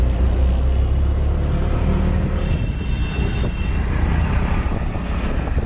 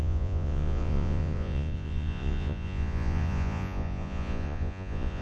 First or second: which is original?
first